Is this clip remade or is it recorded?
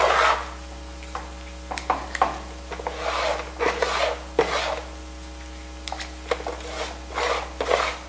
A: recorded